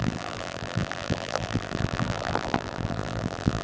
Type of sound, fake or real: fake